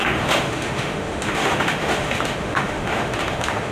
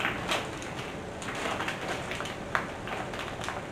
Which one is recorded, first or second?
second